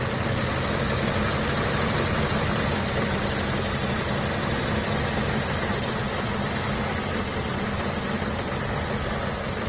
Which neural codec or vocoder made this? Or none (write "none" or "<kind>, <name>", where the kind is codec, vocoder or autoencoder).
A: none